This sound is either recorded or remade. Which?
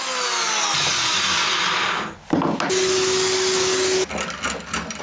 recorded